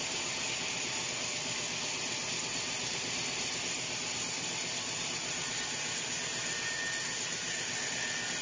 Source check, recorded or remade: recorded